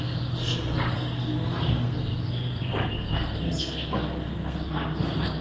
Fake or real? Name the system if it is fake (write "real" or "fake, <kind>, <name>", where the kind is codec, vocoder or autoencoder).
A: fake, codec, SNAC